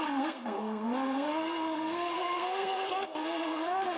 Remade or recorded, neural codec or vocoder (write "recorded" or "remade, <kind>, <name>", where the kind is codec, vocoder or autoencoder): remade, codec, SNAC